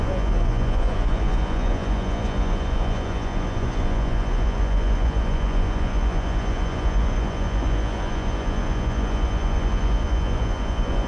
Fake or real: fake